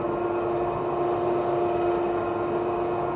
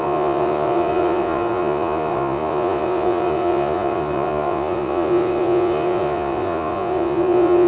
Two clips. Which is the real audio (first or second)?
first